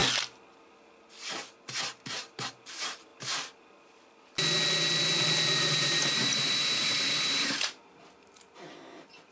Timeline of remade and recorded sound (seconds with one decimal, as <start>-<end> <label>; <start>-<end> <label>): 0.0-2.1 recorded; 2.1-3.1 remade; 3.1-5.6 recorded; 5.6-9.3 remade